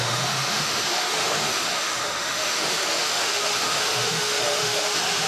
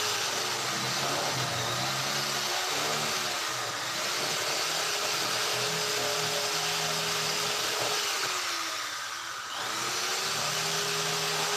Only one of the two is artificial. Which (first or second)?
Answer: first